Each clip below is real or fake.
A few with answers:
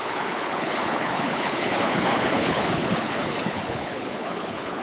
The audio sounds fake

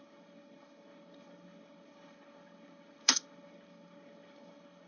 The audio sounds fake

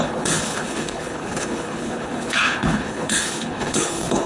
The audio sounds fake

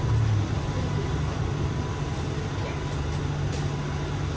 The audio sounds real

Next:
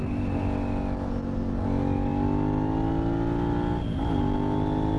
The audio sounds real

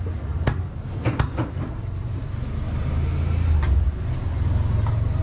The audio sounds real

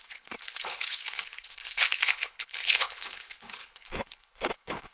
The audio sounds fake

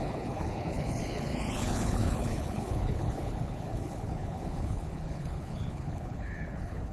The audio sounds fake